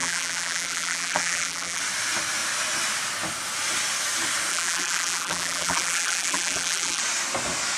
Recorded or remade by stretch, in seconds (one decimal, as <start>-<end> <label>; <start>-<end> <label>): 0.0-1.8 remade; 1.8-4.5 recorded; 4.5-7.0 remade; 7.0-7.8 recorded